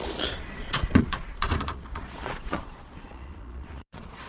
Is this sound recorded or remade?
remade